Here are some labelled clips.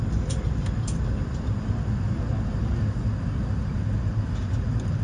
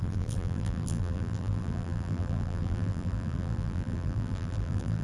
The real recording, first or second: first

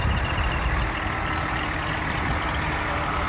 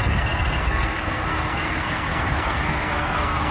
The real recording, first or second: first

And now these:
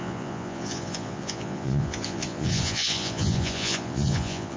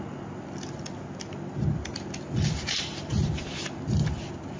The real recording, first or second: second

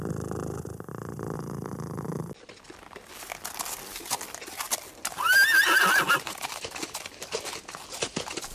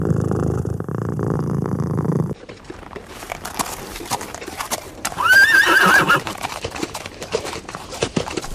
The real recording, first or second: first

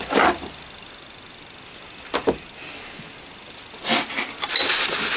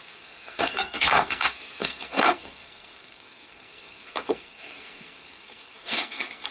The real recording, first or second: first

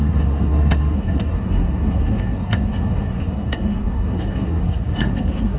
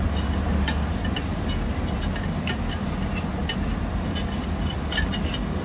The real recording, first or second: second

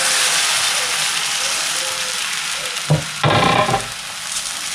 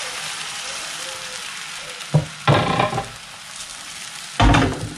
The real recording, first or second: first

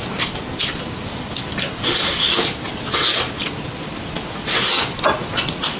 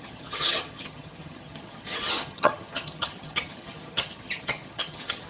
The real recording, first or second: first